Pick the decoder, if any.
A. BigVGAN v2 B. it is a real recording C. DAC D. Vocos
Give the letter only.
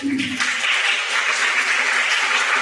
A